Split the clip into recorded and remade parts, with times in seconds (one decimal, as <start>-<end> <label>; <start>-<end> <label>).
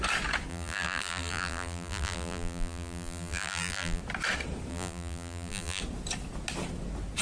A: 0.0-0.5 recorded; 0.5-4.0 remade; 4.0-4.7 recorded; 4.7-5.8 remade; 5.8-7.2 recorded